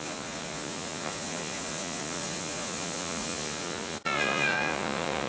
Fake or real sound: fake